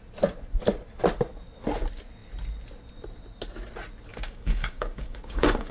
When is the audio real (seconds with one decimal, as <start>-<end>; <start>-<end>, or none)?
0.0-4.1